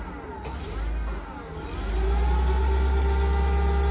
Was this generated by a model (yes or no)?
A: no